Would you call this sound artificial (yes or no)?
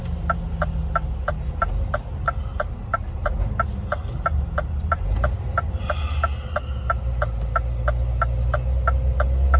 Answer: no